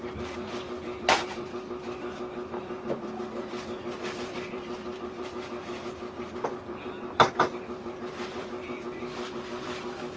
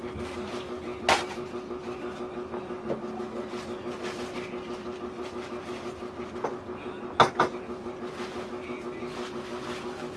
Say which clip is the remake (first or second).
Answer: first